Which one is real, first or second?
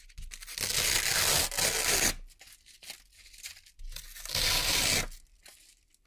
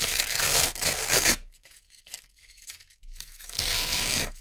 first